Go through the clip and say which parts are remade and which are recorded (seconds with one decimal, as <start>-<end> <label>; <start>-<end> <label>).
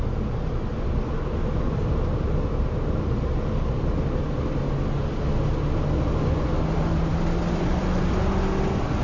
0.0-9.0 recorded